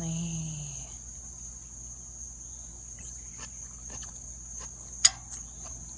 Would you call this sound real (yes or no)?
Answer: yes